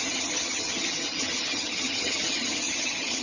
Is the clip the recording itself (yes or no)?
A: no